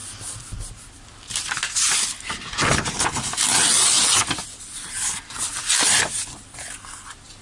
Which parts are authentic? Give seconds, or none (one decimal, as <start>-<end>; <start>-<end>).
0.0-7.4